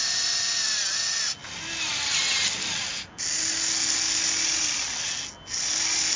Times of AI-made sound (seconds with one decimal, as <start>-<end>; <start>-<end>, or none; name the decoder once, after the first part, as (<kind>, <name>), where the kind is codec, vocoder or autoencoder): none